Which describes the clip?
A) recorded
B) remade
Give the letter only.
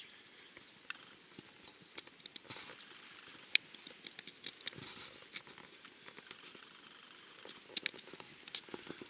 A